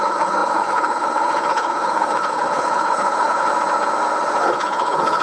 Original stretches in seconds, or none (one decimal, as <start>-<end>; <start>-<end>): 3.5-4.5